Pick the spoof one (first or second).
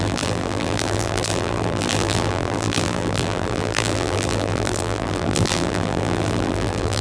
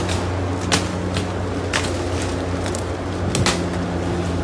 first